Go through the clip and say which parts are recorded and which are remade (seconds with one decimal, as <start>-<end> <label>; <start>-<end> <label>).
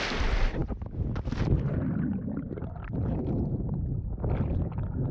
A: 0.0-5.1 recorded